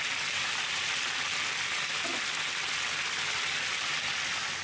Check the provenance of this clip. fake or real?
real